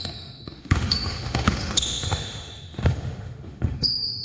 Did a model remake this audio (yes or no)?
yes